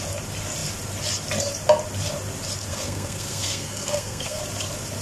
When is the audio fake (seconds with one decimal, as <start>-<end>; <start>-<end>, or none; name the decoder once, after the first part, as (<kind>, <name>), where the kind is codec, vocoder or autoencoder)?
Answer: 2.7-4.4 (codec, SNAC)